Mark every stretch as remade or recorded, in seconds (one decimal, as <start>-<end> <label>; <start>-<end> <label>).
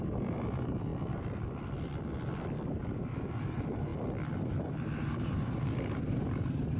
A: 0.0-0.9 remade; 0.9-3.0 recorded; 3.0-3.9 remade; 3.9-4.6 recorded; 4.6-6.8 remade